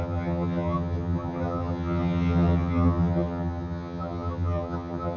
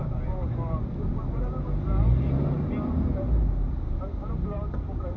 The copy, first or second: first